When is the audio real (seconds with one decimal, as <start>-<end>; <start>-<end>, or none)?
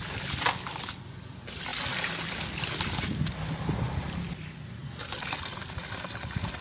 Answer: 0.0-6.6